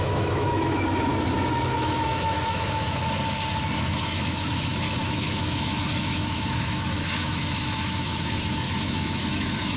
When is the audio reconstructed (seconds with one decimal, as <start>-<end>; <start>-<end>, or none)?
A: 0.0-1.1; 1.8-3.0; 3.8-9.8